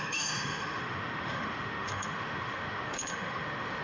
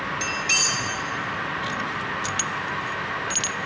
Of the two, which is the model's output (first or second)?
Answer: first